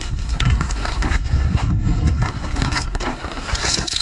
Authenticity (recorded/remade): remade